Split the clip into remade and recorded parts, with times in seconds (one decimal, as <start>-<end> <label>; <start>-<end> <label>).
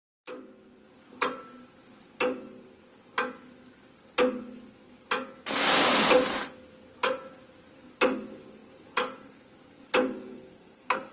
0.0-10.3 recorded; 10.3-11.1 remade